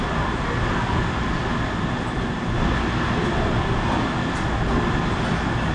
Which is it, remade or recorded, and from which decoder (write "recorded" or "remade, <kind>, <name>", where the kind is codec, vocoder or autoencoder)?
recorded